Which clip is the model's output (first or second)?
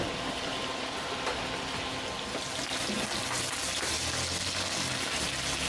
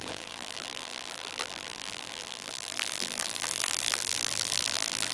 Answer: second